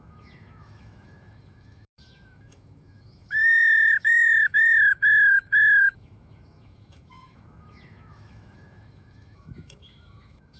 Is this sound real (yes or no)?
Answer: no